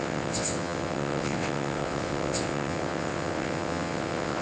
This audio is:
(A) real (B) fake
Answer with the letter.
B